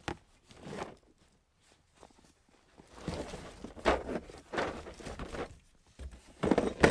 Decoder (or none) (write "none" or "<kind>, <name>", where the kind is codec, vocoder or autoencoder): none